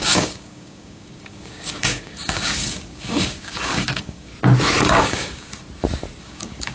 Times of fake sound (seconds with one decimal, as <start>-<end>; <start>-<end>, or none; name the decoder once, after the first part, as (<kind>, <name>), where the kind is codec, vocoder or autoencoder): 0.0-4.3 (codec, DAC); 4.8-5.5; 6.2-6.7